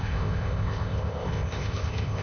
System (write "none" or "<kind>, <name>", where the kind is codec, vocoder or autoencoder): codec, ZipCodec